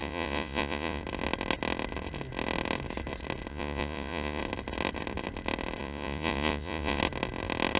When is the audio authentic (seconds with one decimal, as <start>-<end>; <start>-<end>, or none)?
1.0-3.5; 4.4-5.8; 7.0-7.8